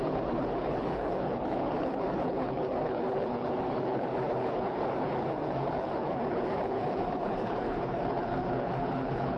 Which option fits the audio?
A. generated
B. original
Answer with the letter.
A